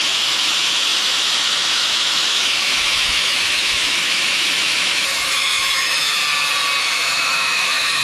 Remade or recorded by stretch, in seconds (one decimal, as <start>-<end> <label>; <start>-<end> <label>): 0.0-6.2 remade; 6.2-6.8 recorded; 6.8-8.0 remade